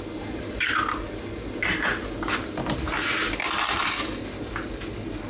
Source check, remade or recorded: recorded